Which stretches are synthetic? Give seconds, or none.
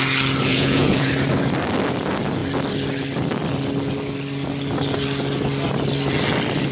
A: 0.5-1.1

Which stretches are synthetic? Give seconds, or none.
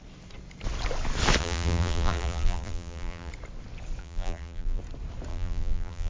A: 1.4-3.3; 4.0-4.8; 5.3-6.1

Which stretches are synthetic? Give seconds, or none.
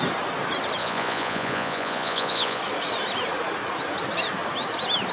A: 0.8-2.6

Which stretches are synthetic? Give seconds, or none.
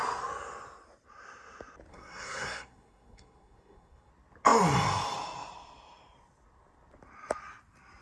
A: 1.9-4.1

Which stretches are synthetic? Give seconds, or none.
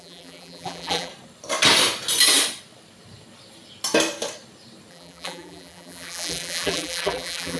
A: 0.0-1.1; 4.9-7.6